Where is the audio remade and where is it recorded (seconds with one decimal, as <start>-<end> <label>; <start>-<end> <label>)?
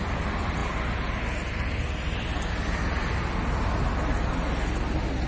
0.0-5.3 recorded